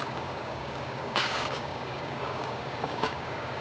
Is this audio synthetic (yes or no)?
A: yes